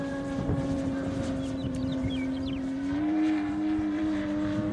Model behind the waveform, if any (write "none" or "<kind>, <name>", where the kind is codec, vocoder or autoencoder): vocoder, BigVGAN v2